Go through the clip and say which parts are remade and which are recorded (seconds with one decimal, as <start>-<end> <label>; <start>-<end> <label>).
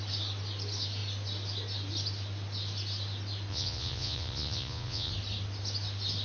0.0-3.5 recorded; 3.5-5.1 remade; 5.1-6.2 recorded